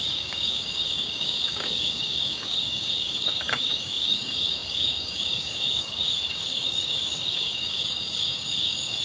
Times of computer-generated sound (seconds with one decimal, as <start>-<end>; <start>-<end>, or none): 0.0-9.0